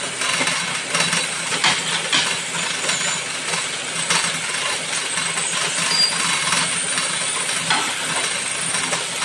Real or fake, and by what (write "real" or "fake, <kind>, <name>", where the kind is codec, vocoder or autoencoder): real